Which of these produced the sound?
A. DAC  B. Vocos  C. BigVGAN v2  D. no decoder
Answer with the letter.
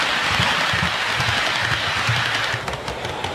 D